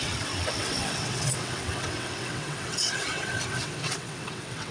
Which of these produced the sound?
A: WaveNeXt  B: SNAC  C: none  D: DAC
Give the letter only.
A